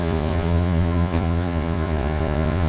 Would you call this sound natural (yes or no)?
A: no